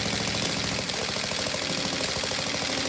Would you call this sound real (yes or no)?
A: yes